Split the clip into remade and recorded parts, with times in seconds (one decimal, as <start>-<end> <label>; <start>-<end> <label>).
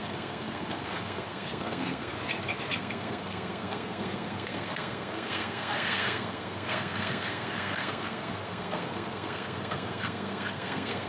0.0-2.1 remade; 2.1-2.8 recorded; 2.8-11.1 remade